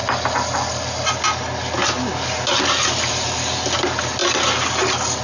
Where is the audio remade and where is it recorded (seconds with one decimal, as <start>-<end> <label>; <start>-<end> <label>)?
0.0-5.2 recorded